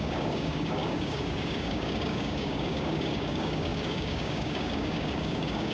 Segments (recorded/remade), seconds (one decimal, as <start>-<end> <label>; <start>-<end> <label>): 0.0-5.7 remade